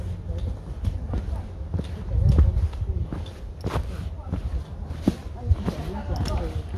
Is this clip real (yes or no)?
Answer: yes